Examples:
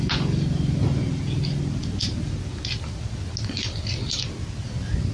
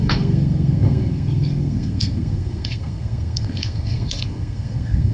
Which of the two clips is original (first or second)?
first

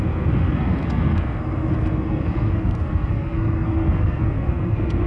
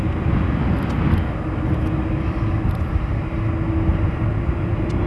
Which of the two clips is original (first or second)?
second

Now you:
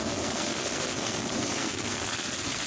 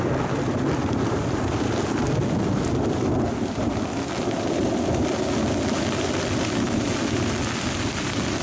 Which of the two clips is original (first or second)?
second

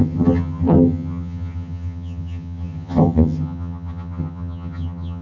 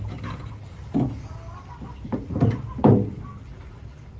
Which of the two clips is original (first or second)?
second